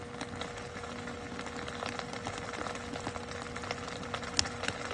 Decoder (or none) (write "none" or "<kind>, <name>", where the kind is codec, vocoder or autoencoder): none